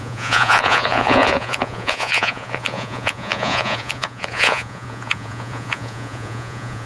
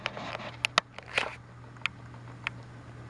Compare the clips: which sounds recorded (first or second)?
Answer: second